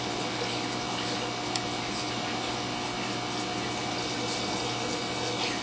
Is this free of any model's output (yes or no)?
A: yes